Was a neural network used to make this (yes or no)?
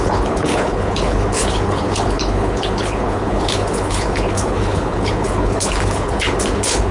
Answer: yes